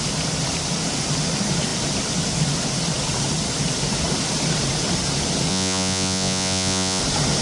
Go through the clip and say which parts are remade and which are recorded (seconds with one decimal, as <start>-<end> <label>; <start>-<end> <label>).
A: 0.0-5.5 recorded; 5.5-7.0 remade; 7.0-7.4 recorded